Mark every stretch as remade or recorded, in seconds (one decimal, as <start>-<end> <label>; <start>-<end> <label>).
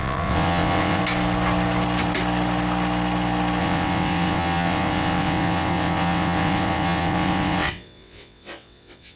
0.0-1.0 remade; 1.0-3.6 recorded; 3.6-9.2 remade